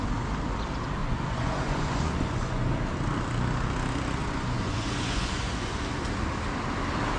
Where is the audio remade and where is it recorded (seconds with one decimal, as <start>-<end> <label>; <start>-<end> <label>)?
0.0-1.0 recorded; 1.0-2.7 remade; 2.7-4.2 recorded; 4.2-5.8 remade; 5.8-7.2 recorded